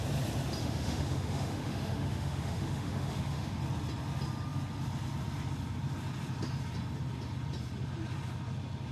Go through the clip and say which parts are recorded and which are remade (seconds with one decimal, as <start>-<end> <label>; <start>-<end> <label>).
0.0-0.6 recorded; 0.6-3.6 remade; 3.6-8.9 recorded